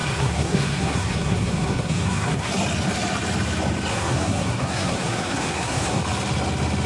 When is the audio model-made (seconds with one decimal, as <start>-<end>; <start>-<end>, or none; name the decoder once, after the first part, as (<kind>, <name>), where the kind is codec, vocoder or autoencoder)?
0.0-2.5 (codec, SNAC); 3.9-6.0